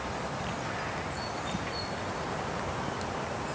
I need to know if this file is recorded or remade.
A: recorded